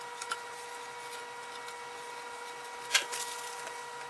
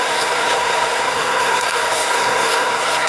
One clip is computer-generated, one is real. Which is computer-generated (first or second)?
second